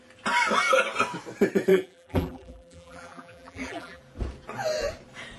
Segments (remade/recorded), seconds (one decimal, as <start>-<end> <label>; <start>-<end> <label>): 0.0-1.7 recorded; 1.7-4.0 remade; 4.0-5.4 recorded